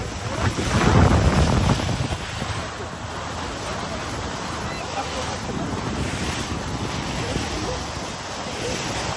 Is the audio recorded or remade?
recorded